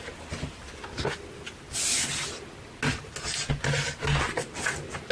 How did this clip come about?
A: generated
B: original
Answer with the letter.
B